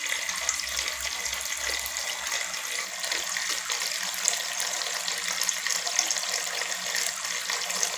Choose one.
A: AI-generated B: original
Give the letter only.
B